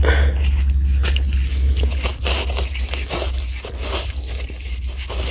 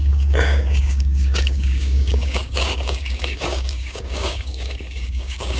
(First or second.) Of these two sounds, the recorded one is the first